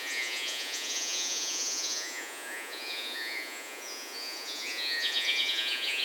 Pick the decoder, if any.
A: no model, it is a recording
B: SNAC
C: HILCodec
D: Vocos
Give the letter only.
D